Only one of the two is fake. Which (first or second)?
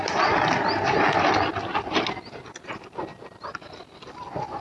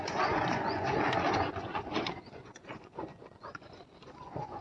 second